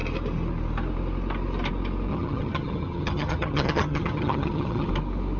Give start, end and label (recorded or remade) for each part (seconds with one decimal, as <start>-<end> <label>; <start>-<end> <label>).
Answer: 0.0-2.1 recorded; 2.1-4.9 remade; 4.9-5.4 recorded

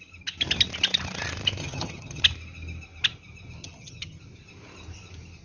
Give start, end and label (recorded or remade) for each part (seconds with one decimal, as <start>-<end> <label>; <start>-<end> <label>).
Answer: 0.0-1.6 recorded; 1.6-2.2 remade; 2.2-3.6 recorded; 3.6-4.2 remade; 4.2-5.4 recorded

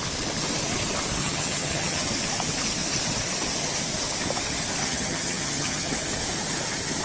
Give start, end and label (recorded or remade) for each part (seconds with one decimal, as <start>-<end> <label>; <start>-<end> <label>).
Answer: 0.0-1.2 recorded; 1.2-2.1 remade; 2.1-4.8 recorded; 4.8-5.9 remade; 5.9-7.0 recorded

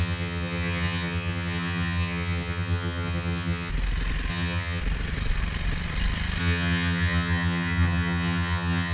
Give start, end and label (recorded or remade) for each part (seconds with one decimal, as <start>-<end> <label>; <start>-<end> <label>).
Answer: 0.0-3.7 remade; 3.7-4.3 recorded; 4.3-4.8 remade; 4.8-6.4 recorded; 6.4-8.9 remade

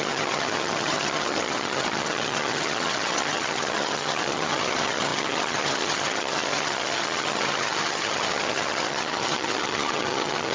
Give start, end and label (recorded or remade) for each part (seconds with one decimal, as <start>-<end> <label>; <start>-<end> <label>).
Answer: 0.0-10.5 remade